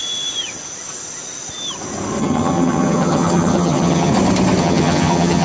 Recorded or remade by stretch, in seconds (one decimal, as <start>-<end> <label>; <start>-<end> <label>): 0.0-2.2 recorded; 2.2-4.1 remade; 4.1-4.6 recorded; 4.6-5.4 remade